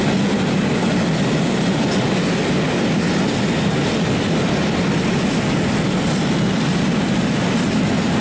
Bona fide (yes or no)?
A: yes